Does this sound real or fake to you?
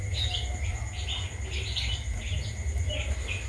real